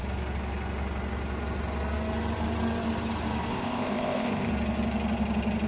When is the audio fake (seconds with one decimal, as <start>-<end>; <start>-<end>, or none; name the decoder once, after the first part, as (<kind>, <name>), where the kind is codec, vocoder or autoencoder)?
3.5-4.5 (codec, ZipCodec)